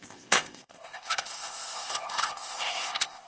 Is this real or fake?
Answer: fake